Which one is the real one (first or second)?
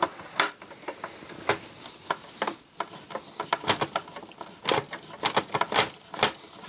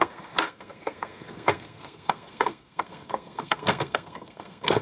first